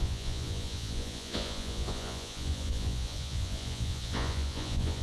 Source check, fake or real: fake